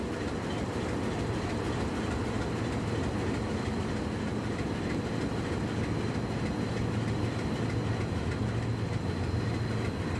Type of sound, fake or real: real